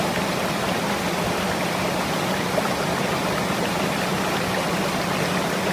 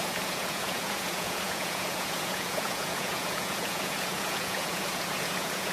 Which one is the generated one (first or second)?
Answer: second